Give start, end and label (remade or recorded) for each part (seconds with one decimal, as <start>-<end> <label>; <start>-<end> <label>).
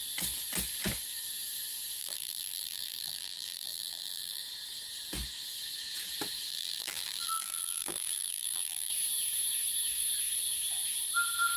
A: 0.0-2.0 recorded; 2.0-4.4 remade; 4.4-6.5 recorded; 6.5-8.9 remade; 8.9-11.6 recorded